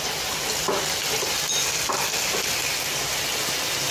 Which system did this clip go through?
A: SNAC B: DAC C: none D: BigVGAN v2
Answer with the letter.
C